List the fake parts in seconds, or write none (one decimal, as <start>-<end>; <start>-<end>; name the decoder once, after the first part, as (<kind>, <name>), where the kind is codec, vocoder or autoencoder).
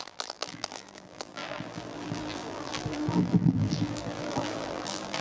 0.0-5.2 (vocoder, BigVGAN v2)